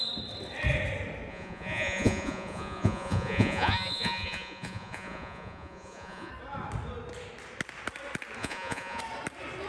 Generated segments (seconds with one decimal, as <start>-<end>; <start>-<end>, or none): 1.3-6.3; 8.4-9.0